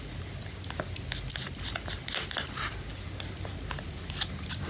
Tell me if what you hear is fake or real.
real